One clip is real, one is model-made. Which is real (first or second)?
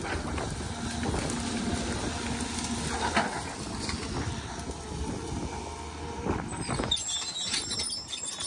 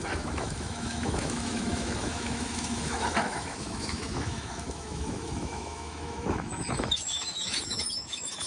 first